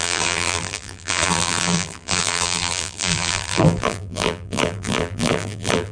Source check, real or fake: fake